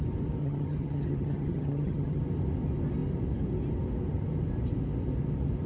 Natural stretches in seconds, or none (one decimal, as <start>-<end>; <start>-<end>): 0.0-0.4; 2.2-5.7